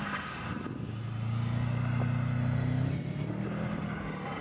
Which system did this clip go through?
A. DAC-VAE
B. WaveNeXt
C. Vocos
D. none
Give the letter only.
D